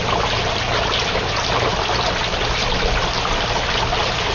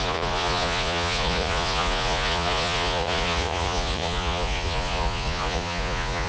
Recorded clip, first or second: first